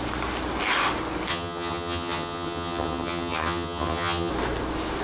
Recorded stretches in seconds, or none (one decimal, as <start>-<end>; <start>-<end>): 0.0-1.3; 4.3-5.0